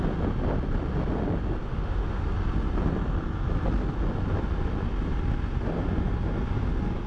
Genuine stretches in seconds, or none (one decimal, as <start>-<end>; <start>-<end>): 0.0-1.6; 2.3-7.1